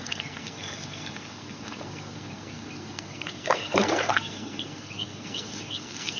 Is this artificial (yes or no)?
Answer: yes